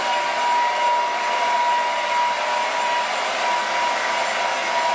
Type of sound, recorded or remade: recorded